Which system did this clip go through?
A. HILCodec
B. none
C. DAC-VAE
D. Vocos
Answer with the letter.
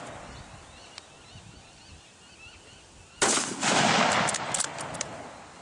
B